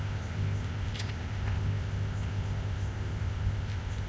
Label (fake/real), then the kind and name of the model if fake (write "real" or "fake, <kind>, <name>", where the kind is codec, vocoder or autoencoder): fake, codec, ZipCodec